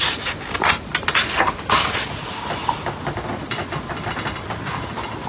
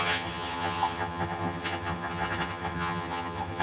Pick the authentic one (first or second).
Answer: first